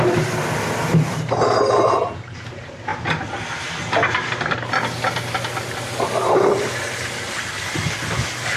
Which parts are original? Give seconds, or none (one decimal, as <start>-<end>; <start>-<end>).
0.0-8.6